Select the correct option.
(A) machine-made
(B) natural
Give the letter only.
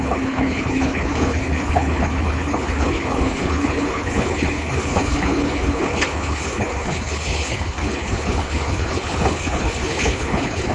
A